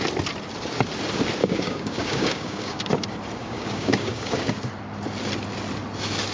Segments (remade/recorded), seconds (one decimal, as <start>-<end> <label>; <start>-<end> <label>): 0.0-1.4 recorded; 1.4-2.8 remade; 2.8-3.4 recorded; 3.4-4.5 remade; 4.5-6.3 recorded

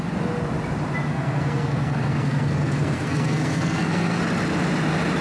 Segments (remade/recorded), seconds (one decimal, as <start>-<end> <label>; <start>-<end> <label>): 0.0-1.1 recorded; 1.1-4.2 remade; 4.2-5.2 recorded

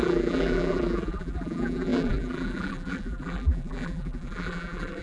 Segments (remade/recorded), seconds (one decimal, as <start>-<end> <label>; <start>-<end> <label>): 0.0-5.0 remade

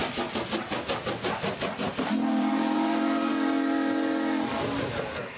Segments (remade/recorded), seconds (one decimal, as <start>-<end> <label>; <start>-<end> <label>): 0.0-1.8 recorded; 1.8-3.3 remade; 3.3-5.4 recorded